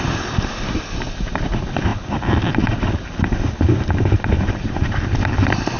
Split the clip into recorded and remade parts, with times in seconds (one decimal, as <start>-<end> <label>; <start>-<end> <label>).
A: 0.0-5.8 recorded